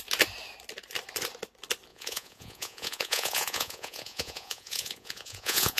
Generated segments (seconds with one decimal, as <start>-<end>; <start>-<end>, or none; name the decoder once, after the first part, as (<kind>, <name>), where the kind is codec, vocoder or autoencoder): 1.9-5.8 (vocoder, Vocos)